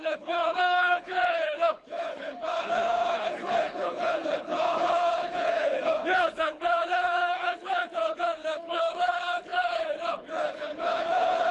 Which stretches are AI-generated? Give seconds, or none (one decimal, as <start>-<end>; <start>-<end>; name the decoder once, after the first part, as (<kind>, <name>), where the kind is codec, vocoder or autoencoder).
0.0-11.5 (codec, HILCodec)